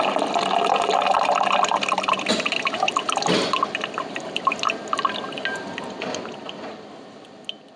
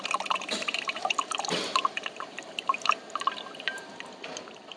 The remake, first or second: second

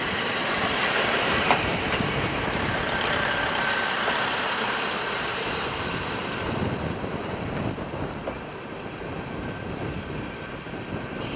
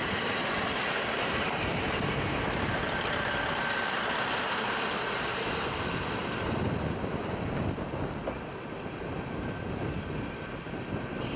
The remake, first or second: first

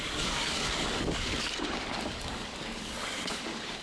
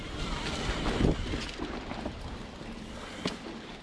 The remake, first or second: first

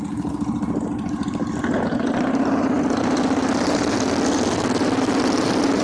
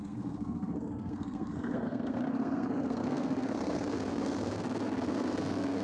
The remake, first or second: second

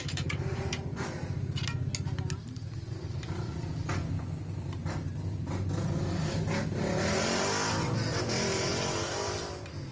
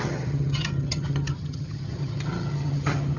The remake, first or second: second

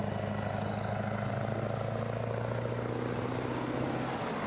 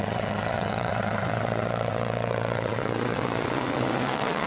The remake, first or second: second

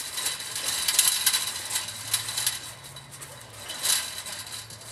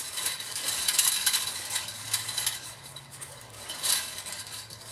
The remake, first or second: second